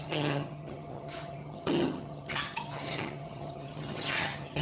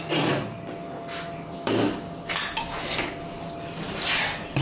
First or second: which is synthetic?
first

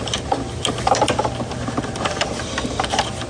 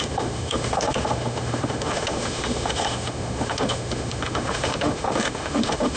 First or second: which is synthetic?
second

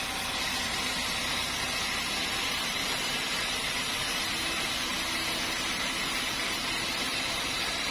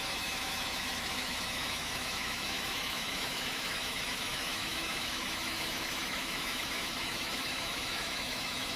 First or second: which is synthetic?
second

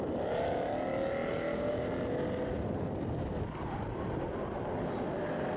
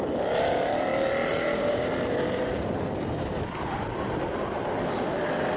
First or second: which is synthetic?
second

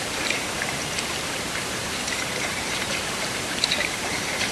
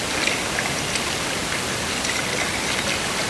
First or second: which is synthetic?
first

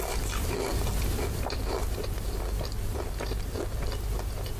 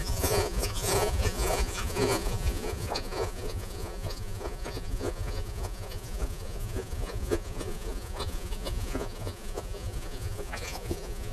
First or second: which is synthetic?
second